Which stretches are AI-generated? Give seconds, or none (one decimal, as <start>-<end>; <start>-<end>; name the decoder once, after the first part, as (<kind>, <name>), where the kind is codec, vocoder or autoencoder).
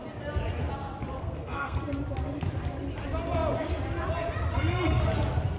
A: 1.2-1.8 (codec, SNAC)